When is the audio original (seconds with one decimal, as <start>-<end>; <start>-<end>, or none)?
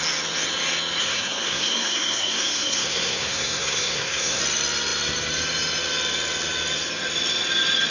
0.0-1.0; 4.4-7.9